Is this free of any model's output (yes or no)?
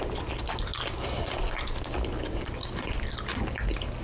yes